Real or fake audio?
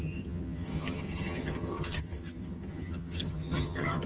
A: fake